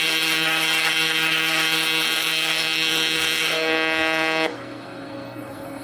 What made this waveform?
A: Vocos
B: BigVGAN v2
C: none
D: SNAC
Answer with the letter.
D